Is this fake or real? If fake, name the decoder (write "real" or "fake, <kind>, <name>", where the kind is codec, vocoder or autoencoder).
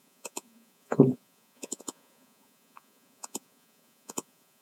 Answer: fake, vocoder, Vocos